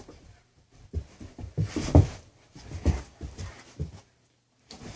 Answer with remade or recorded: recorded